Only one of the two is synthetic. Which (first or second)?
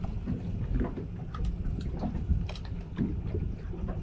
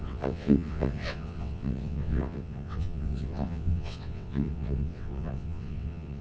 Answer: second